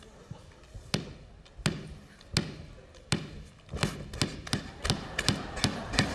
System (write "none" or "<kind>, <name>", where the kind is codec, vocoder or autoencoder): none